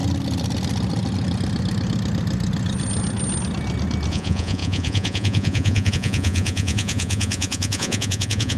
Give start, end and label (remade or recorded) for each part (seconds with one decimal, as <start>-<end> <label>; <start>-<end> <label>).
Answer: 0.0-4.1 recorded; 4.1-8.6 remade